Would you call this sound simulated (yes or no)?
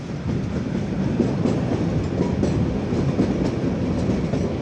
no